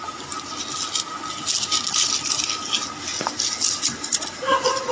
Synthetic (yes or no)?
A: no